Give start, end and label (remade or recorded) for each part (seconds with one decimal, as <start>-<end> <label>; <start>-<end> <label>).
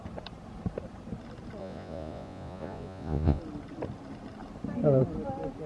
0.0-1.6 recorded; 1.6-3.4 remade; 3.4-5.7 recorded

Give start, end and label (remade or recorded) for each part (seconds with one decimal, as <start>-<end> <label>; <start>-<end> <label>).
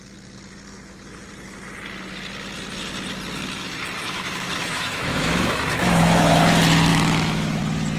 0.0-4.0 recorded; 4.0-6.4 remade; 6.4-6.9 recorded; 6.9-7.6 remade; 7.6-8.0 recorded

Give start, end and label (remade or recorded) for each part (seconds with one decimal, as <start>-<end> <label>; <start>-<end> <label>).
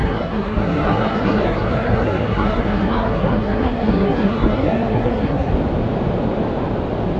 0.0-5.5 remade; 5.5-7.2 recorded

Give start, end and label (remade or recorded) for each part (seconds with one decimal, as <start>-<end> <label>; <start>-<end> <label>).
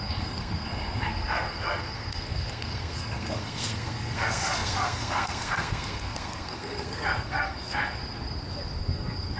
0.0-8.0 remade; 8.0-8.8 recorded; 8.8-9.4 remade